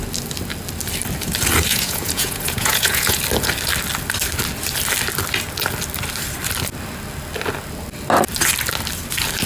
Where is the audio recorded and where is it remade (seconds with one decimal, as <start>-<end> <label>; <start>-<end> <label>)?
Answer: 0.0-1.7 recorded; 1.7-3.2 remade; 3.2-9.5 recorded